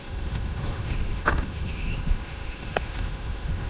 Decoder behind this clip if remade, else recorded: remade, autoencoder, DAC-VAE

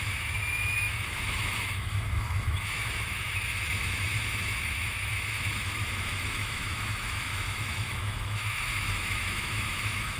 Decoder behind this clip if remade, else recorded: remade, autoencoder, DAC-VAE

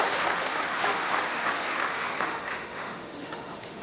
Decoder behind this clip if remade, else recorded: remade, autoencoder, DAC-VAE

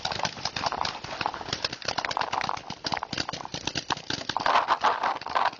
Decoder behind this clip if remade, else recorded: recorded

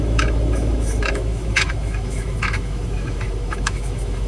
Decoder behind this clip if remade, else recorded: remade, autoencoder, DAC-VAE